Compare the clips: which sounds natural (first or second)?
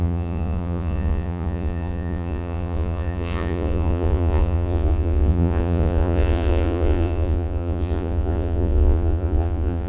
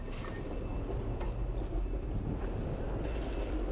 second